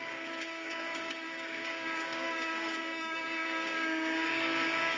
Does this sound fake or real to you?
fake